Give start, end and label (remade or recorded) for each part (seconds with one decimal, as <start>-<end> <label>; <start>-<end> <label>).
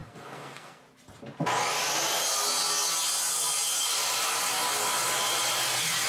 0.0-0.8 remade; 0.8-6.1 recorded